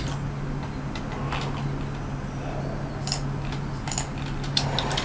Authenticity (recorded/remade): recorded